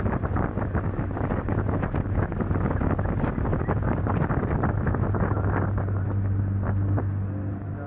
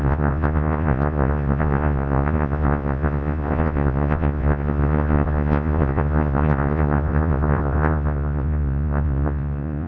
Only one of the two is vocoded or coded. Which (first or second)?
second